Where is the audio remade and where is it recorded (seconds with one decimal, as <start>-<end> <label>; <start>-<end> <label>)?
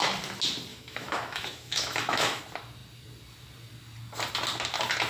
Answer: 0.0-0.7 recorded; 0.7-2.4 remade; 2.4-5.1 recorded